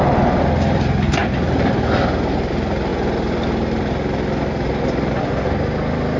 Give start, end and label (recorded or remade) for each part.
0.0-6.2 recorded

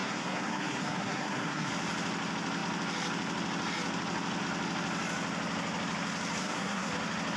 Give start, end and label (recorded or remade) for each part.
0.0-1.7 remade; 1.7-6.4 recorded; 6.4-6.9 remade; 6.9-7.4 recorded

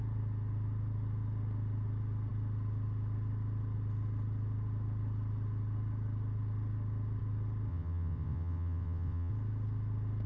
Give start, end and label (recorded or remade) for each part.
0.0-7.7 recorded; 7.7-9.3 remade; 9.3-10.3 recorded